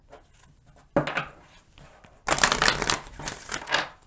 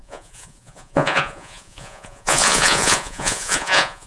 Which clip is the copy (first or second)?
second